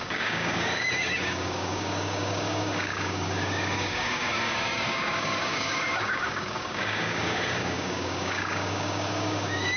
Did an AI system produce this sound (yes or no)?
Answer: yes